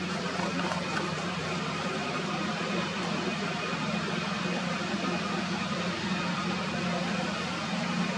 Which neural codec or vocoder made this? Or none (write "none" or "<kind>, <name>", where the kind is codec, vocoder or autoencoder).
none